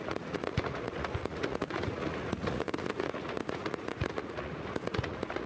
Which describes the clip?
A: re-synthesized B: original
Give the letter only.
A